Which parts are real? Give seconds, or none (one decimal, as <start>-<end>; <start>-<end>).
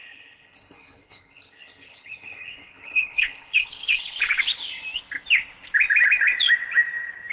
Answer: 4.4-7.3